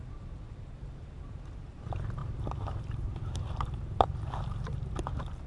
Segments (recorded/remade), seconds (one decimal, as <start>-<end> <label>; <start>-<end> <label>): 0.0-5.5 remade